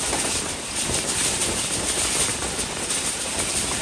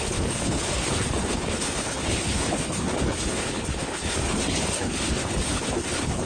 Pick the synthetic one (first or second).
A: second